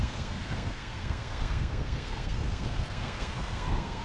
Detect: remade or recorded remade